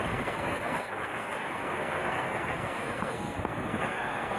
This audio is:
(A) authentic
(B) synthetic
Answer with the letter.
B